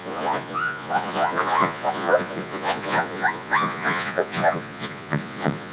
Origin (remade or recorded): remade